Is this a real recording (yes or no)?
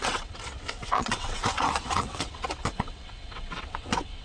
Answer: no